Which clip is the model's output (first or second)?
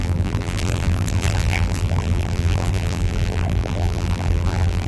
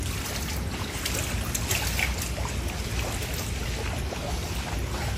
first